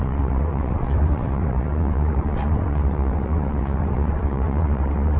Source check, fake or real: fake